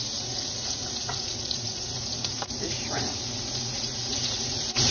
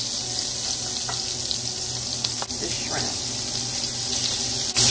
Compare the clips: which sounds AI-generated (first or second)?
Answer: first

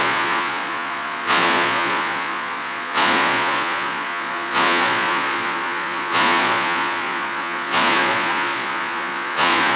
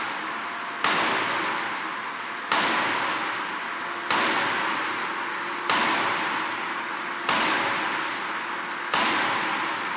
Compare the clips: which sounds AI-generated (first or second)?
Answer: first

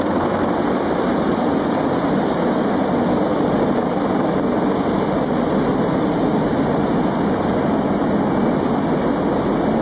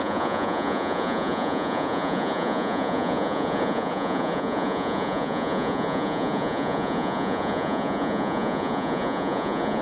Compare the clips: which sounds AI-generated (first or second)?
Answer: second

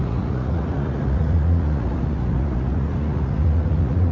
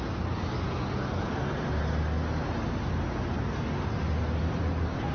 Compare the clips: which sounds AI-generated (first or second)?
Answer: first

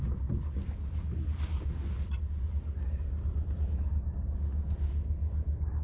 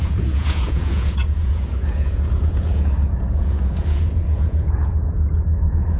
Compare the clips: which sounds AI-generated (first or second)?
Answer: second